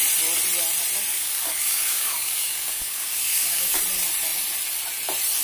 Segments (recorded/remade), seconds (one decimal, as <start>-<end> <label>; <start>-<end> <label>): 0.0-1.1 recorded; 1.1-3.8 remade; 3.8-5.4 recorded